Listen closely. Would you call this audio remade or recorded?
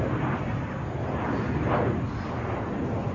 recorded